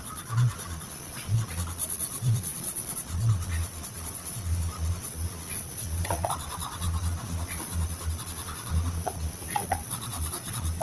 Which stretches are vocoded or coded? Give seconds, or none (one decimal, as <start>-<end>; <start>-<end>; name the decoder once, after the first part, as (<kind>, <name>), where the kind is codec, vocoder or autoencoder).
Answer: 0.0-10.8 (vocoder, Vocos)